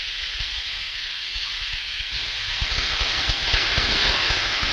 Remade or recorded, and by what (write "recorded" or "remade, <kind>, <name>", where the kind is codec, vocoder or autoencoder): remade, codec, SNAC